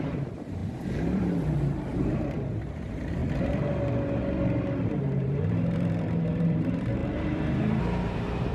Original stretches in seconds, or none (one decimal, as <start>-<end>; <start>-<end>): 3.2-4.9